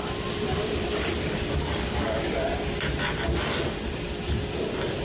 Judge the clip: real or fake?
real